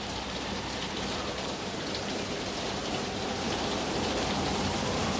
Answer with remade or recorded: remade